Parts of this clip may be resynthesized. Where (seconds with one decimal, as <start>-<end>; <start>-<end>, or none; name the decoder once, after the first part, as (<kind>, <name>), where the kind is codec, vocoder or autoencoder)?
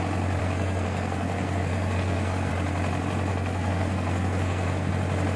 0.4-2.5 (codec, SNAC); 3.3-4.9